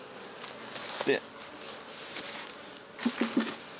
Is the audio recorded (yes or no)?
yes